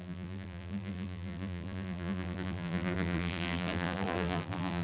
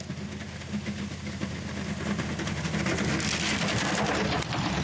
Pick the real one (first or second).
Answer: second